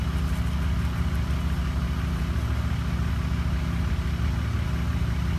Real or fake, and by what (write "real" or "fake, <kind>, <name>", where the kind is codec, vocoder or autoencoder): real